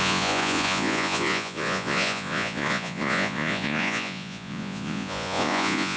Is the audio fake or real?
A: fake